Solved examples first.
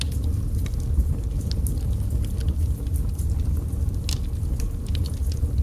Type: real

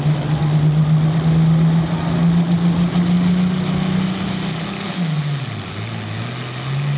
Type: real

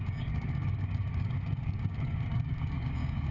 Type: fake